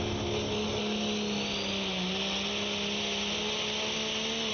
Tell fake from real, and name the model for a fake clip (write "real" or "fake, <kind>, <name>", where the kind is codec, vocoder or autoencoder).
real